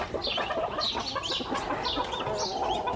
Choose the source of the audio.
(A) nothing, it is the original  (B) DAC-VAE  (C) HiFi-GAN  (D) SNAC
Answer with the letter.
A